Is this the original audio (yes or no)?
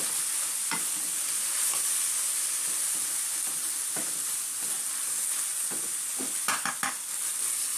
yes